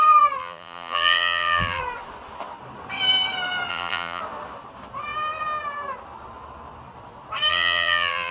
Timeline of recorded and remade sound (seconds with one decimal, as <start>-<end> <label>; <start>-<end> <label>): 0.0-0.4 recorded; 0.4-1.8 remade; 1.8-3.7 recorded; 3.7-4.2 remade; 4.2-7.5 recorded; 7.5-8.3 remade